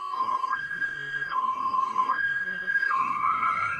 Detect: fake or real fake